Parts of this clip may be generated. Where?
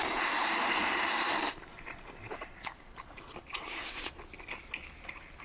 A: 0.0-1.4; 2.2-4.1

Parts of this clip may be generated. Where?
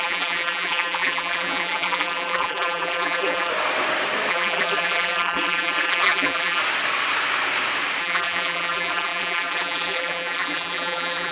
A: 0.0-3.5; 4.3-6.6; 8.0-11.3